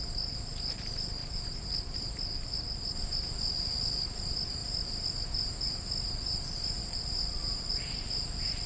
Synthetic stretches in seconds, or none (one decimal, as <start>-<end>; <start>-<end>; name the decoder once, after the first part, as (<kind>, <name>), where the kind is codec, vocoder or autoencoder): none